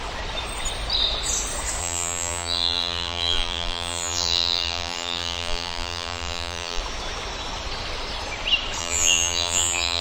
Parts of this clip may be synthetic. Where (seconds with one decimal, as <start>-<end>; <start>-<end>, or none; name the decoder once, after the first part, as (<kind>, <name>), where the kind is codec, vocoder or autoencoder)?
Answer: 1.8-6.8 (vocoder, BigVGAN v2); 8.8-10.0